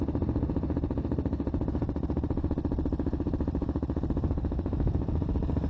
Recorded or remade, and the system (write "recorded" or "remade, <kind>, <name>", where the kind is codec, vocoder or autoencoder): recorded